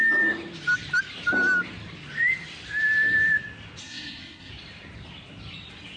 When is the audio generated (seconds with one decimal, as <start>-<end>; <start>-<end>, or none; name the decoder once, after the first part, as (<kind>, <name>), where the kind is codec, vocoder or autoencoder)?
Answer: 3.8-4.5 (codec, SNAC)